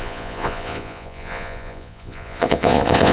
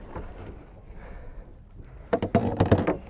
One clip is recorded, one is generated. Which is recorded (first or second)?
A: second